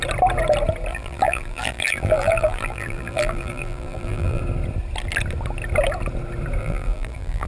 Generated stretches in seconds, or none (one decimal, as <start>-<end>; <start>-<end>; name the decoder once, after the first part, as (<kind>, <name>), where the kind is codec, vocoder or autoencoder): 0.9-4.4 (vocoder, BigVGAN v2); 6.6-7.5